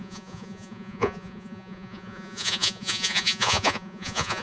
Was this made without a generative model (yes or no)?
no